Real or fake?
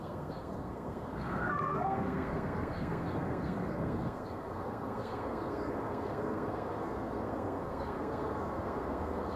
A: fake